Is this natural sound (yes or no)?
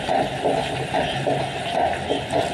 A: yes